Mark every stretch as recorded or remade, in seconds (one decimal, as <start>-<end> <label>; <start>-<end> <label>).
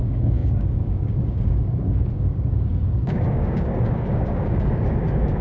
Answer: 0.0-5.4 remade